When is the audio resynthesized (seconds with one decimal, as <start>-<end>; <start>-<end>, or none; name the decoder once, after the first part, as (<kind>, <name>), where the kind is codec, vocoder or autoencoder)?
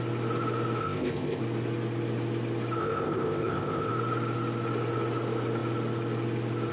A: 0.8-1.4 (codec, ZipCodec); 2.8-3.9